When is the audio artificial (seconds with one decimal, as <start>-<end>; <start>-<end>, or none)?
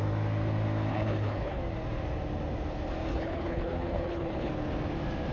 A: 0.9-1.6; 3.1-4.5